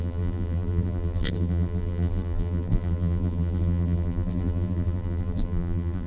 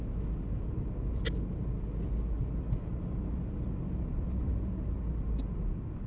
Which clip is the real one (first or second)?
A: second